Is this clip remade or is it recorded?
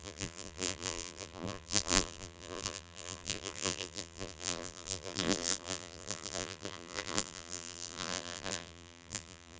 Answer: remade